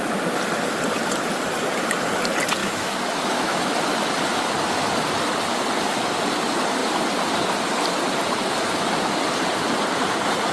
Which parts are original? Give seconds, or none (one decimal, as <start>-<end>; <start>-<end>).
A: 0.0-2.6; 3.7-10.5